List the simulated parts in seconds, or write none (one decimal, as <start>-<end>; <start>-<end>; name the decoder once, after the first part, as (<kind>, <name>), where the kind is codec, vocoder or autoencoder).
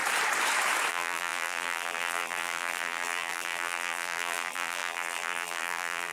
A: 0.9-6.1 (vocoder, BigVGAN v2)